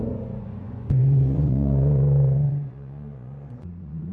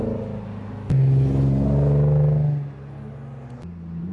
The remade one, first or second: first